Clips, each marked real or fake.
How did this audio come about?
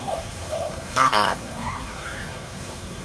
fake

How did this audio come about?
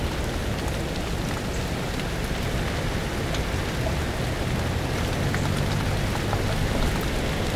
real